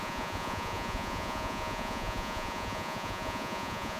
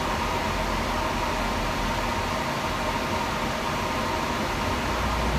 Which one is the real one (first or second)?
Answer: second